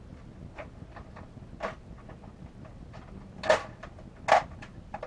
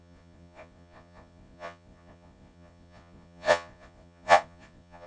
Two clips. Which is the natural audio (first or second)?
first